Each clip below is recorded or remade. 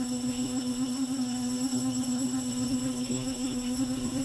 remade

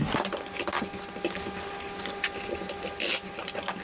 recorded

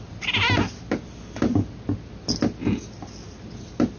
recorded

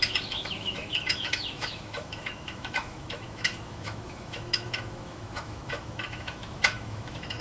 remade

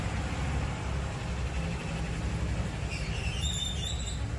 recorded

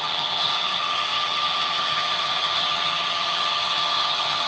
remade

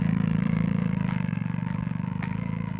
remade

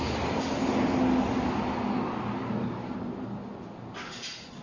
recorded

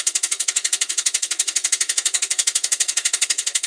remade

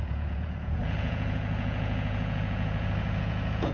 remade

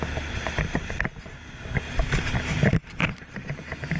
recorded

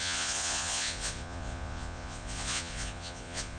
remade